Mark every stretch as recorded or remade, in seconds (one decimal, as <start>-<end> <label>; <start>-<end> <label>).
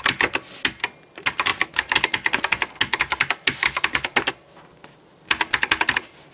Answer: 0.0-6.3 recorded